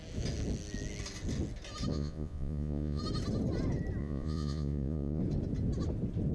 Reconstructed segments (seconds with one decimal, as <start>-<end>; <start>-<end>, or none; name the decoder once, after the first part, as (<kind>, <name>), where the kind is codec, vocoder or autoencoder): 1.9-3.0 (vocoder, Vocos); 4.0-5.2